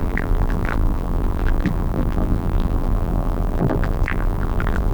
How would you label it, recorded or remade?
remade